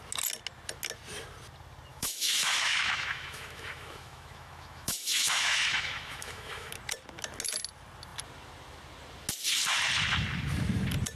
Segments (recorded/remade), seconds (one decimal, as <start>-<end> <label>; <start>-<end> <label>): 0.0-1.9 recorded; 1.9-6.7 remade; 6.7-11.2 recorded